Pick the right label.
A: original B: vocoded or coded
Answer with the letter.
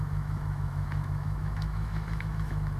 B